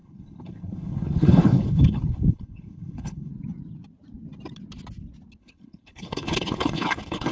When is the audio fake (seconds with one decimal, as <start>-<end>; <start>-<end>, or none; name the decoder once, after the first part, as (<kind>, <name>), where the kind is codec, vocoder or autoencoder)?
0.0-3.3 (codec, HILCodec); 5.4-7.3